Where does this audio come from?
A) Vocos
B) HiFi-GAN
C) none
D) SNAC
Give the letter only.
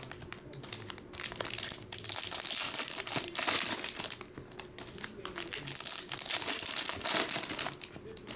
C